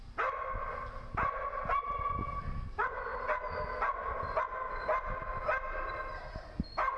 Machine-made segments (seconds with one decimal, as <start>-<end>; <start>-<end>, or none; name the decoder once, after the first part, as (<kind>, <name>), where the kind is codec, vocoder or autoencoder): none